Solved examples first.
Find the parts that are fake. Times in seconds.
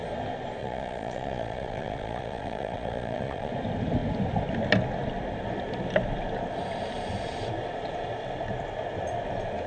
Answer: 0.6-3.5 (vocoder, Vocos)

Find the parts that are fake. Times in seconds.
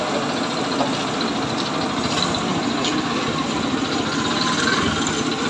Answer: none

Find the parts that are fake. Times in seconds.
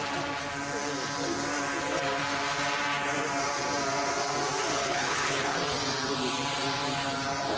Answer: 4.7-5.6 (codec, HILCodec)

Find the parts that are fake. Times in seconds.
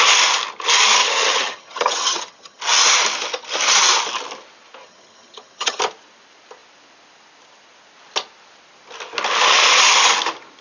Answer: 1.0-2.6 (vocoder, HiFi-GAN); 4.8-5.8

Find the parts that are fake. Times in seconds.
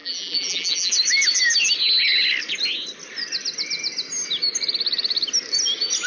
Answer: 0.0-0.9 (vocoder, BigVGAN v2)